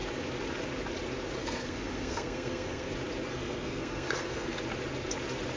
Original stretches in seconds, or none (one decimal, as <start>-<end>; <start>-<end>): 0.0-1.4; 2.9-3.3; 4.6-5.6